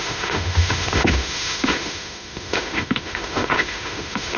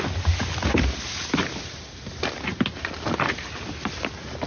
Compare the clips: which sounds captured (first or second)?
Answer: second